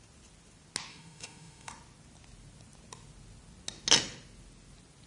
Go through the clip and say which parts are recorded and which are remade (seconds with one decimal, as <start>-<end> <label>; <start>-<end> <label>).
0.0-0.9 recorded; 0.9-1.7 remade; 1.7-5.1 recorded